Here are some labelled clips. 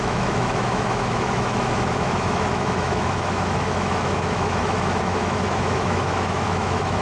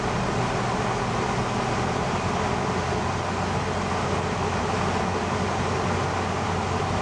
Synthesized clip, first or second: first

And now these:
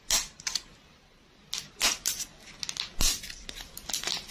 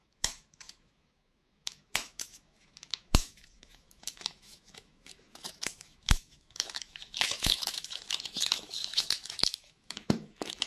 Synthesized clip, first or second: second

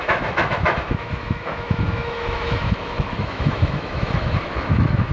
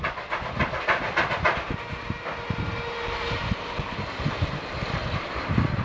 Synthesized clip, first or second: first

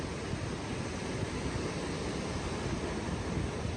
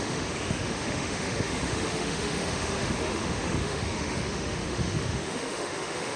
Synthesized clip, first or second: second